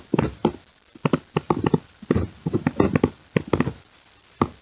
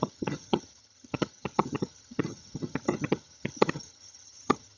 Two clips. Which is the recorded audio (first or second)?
first